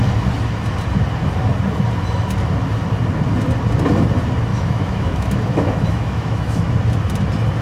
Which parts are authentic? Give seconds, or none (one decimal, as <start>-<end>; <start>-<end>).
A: 0.0-4.5; 6.8-7.6